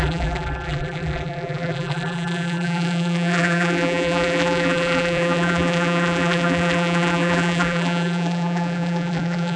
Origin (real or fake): fake